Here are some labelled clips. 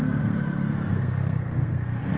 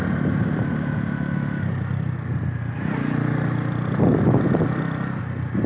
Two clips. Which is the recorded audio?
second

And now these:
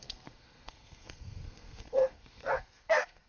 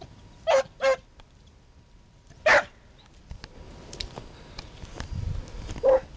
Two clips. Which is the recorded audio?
second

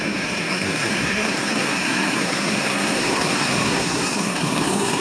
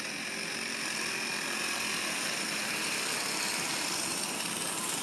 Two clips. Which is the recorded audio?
second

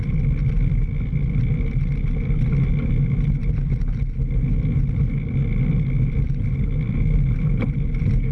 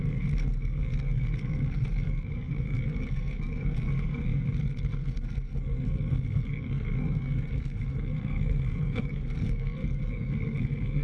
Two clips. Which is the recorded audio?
first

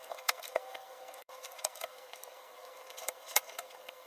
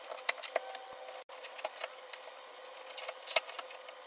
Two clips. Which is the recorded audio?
second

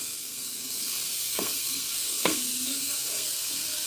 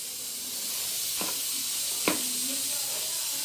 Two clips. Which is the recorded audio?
second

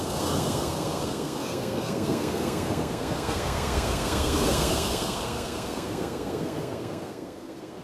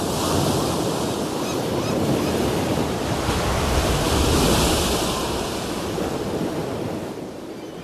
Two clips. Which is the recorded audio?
second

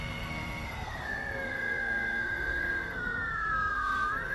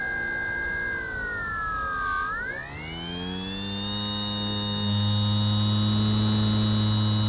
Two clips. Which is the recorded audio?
second